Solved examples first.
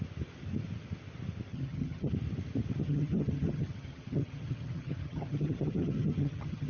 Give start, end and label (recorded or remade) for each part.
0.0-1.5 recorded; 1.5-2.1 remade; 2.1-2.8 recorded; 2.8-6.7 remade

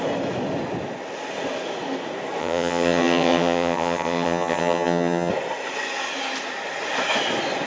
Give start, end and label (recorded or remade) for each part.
0.0-2.4 recorded; 2.4-5.3 remade; 5.3-7.7 recorded

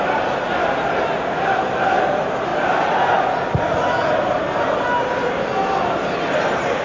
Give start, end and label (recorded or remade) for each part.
0.0-6.8 recorded

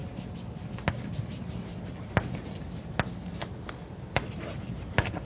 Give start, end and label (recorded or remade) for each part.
0.0-5.2 recorded

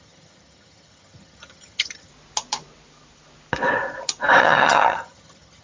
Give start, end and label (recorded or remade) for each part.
0.0-2.1 remade; 2.1-4.4 recorded; 4.4-5.6 remade